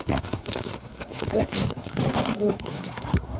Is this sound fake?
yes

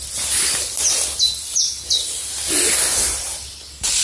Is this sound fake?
no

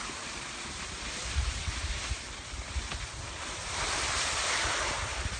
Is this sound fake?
no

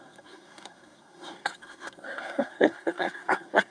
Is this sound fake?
yes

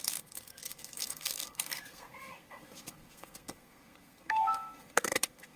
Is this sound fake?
yes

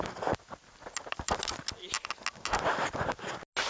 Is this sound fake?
no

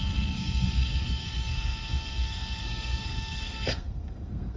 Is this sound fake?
yes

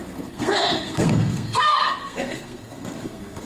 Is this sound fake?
yes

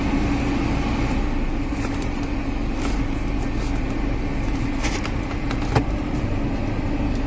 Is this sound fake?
no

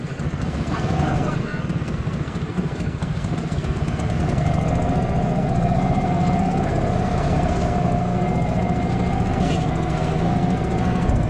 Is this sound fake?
yes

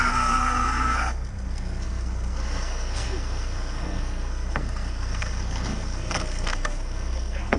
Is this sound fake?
yes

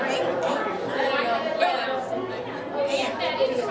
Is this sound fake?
no